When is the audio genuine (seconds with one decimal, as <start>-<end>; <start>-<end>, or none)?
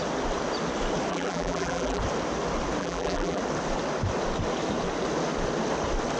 0.0-1.1; 2.0-2.8; 3.4-6.2